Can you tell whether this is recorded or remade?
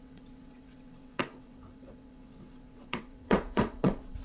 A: remade